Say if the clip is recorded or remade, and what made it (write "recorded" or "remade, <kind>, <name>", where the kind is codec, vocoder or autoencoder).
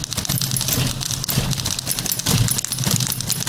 recorded